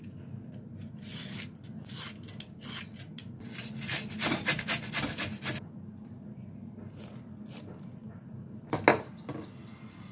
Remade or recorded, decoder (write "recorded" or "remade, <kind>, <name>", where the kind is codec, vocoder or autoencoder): recorded